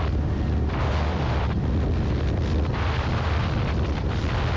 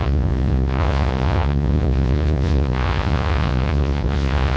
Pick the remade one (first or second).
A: second